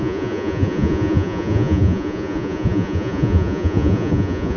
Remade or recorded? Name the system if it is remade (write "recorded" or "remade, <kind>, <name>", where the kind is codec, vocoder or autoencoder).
remade, vocoder, Vocos